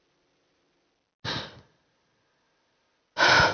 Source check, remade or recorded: recorded